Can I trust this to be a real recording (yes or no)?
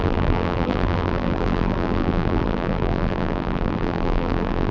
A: no